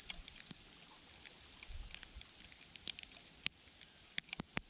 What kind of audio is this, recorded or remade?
recorded